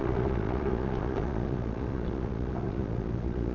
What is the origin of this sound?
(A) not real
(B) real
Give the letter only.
A